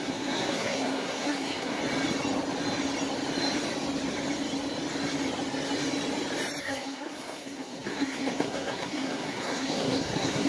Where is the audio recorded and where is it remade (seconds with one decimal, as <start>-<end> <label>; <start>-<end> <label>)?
0.0-1.8 remade; 1.8-6.6 recorded; 6.6-10.5 remade